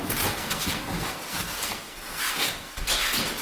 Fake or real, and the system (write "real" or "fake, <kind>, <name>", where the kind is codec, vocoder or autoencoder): fake, codec, SNAC